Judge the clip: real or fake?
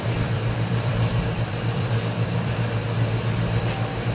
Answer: fake